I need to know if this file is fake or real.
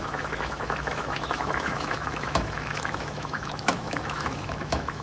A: fake